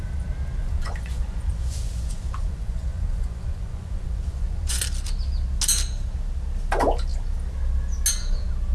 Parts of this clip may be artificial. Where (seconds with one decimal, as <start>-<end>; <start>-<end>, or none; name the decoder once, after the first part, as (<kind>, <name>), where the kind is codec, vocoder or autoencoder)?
0.6-4.8 (vocoder, Vocos)